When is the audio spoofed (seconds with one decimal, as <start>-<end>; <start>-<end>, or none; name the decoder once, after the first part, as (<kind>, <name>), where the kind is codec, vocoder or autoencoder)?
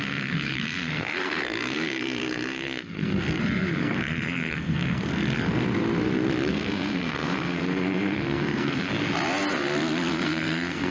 0.0-5.1 (codec, SNAC); 6.5-8.9; 10.1-10.9